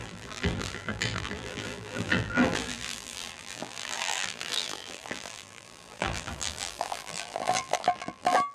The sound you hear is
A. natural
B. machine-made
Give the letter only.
B